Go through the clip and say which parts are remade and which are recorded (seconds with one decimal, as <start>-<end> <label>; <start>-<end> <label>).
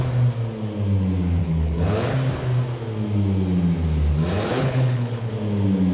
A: 0.0-1.4 recorded; 1.4-2.1 remade; 2.1-4.5 recorded; 4.5-5.3 remade; 5.3-5.9 recorded